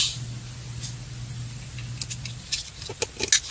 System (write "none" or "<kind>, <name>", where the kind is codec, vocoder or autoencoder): none